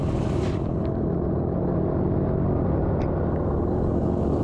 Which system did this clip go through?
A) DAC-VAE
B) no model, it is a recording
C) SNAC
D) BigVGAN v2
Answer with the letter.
B